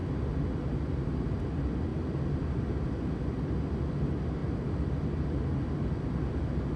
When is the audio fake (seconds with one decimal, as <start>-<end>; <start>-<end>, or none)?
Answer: none